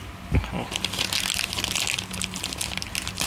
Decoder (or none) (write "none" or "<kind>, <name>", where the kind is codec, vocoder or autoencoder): none